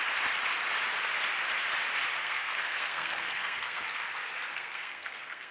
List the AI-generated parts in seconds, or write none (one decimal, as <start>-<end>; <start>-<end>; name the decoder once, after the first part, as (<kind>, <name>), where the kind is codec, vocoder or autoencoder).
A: 2.2-3.8 (codec, SNAC); 4.5-5.5

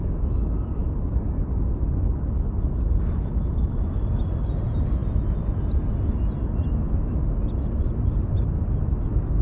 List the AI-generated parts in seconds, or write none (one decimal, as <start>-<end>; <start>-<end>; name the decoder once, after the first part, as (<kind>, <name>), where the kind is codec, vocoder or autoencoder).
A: none

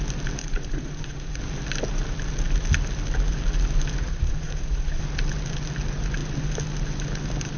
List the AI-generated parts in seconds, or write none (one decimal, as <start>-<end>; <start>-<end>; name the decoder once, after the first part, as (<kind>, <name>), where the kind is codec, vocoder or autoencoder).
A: 0.4-1.4 (vocoder, Vocos); 4.1-5.0

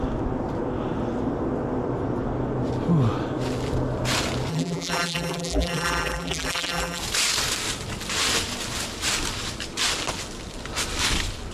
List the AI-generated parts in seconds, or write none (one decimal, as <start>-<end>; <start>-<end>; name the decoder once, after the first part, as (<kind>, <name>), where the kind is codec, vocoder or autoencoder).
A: 4.5-7.0 (vocoder, BigVGAN v2)

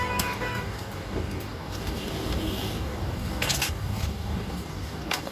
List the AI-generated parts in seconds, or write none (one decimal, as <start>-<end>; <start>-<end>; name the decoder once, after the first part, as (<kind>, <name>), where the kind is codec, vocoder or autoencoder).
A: 0.0-5.3 (codec, DAC)

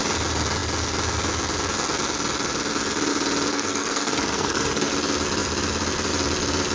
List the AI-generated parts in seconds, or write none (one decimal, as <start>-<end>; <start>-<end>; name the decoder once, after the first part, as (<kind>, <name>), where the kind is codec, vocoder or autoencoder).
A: 3.5-4.9 (codec, SNAC)

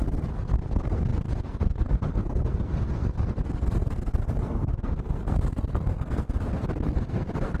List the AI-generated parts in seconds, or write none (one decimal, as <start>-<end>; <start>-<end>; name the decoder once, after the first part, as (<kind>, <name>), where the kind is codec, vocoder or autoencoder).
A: 0.0-7.6 (codec, SNAC)

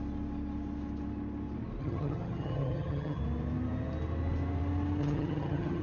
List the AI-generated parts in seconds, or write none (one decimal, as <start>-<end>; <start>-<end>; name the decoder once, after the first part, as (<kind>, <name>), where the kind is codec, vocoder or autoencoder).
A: 1.8-3.2 (vocoder, HiFi-GAN); 5.0-5.8